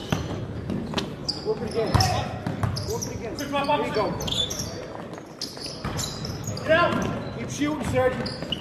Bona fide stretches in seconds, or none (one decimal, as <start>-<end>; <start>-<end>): 0.7-8.6